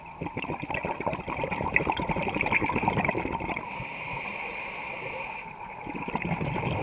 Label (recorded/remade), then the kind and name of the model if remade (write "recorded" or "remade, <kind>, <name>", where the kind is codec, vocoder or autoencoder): remade, vocoder, BigVGAN v2